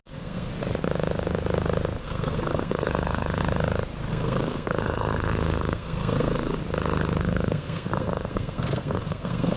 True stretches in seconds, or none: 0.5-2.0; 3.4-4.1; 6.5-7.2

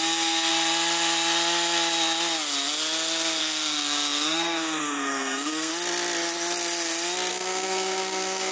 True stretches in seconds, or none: 0.5-3.4; 5.7-7.3

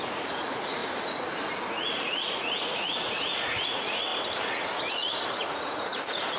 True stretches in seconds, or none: 0.8-1.7; 4.1-4.9

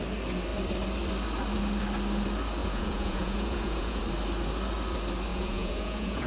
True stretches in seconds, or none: 0.0-2.6; 4.0-5.3

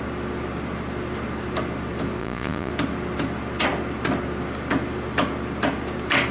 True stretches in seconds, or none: 0.0-2.2; 2.7-6.3